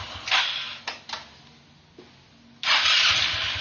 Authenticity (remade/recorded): recorded